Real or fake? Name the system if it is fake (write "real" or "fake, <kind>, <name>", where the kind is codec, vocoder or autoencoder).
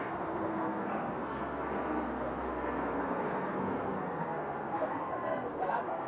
fake, codec, SNAC